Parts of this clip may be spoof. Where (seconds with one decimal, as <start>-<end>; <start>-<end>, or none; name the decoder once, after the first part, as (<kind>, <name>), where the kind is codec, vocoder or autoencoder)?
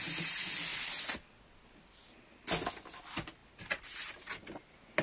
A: none